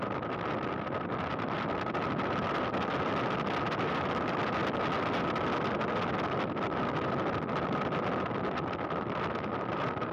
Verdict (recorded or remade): recorded